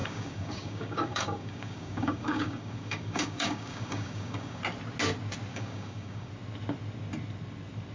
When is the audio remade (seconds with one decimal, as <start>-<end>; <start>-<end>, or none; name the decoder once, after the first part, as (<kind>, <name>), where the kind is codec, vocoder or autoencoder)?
0.0-4.6 (codec, DAC); 5.5-6.3